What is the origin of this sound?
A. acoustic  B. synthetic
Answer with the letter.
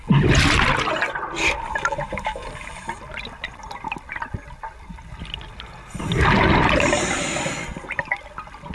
A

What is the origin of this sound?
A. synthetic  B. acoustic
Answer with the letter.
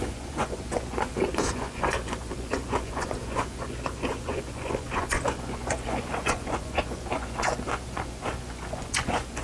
A